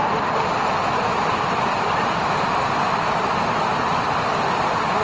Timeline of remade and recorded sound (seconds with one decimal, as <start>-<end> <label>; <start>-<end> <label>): 0.0-5.0 recorded